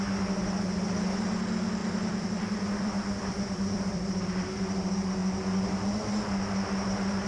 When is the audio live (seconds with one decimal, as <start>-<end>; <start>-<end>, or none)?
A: 0.0-1.8; 4.7-7.3